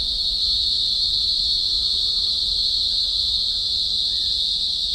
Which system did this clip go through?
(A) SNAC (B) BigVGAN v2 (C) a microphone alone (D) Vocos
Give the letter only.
B